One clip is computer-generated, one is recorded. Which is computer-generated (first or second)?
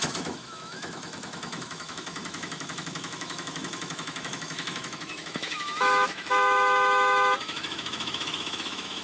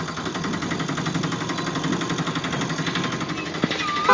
first